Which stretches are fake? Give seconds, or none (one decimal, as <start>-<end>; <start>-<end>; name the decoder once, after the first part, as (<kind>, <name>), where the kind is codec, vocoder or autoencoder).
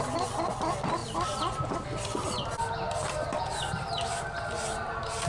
none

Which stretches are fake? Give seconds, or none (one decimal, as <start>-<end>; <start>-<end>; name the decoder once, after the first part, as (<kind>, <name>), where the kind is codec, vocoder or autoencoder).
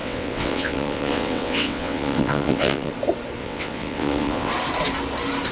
0.0-2.9 (vocoder, WaveNeXt); 3.4-4.5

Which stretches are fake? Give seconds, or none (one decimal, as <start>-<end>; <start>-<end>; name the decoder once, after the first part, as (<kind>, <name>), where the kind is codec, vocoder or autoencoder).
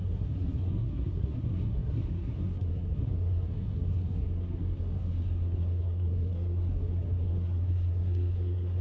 0.0-8.8 (codec, SNAC)